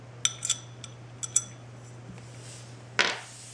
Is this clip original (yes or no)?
yes